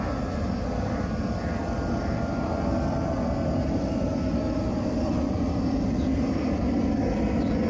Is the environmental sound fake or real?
real